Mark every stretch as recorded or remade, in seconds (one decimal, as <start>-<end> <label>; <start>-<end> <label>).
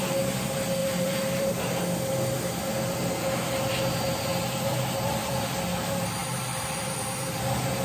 0.0-0.8 recorded; 0.8-1.8 remade; 1.8-6.2 recorded; 6.2-7.2 remade; 7.2-7.8 recorded